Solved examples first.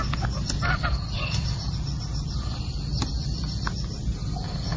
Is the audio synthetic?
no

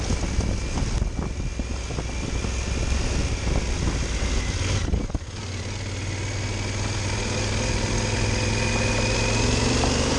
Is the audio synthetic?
no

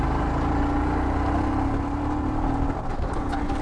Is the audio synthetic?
no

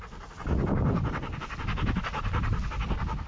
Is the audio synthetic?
no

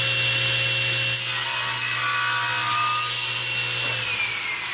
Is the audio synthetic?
no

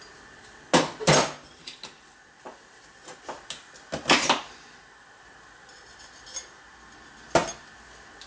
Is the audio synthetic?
no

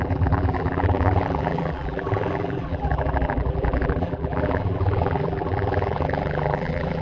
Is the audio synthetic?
yes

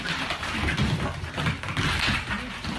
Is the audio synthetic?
no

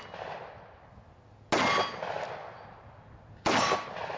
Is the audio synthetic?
no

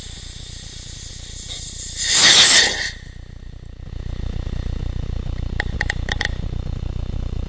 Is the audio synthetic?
no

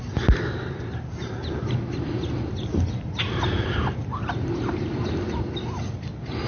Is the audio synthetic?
no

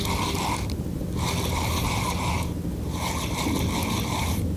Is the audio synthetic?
no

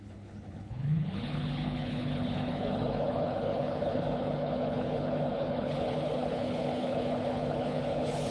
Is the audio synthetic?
yes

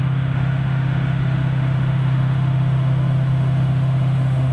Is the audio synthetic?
yes